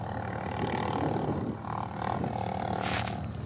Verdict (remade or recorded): recorded